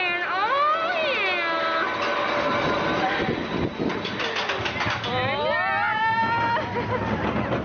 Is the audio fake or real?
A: real